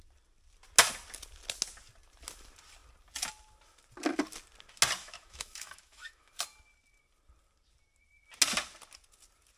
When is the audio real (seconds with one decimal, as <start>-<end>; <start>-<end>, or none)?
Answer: 0.0-5.0; 6.3-9.6